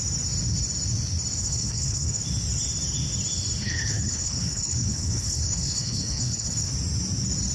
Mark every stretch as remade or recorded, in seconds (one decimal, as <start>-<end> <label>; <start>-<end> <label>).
0.0-1.4 recorded; 1.4-2.2 remade; 2.2-3.6 recorded; 3.6-6.7 remade; 6.7-7.5 recorded